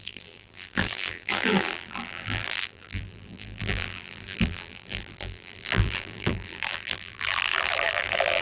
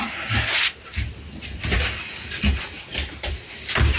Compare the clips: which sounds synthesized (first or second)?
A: first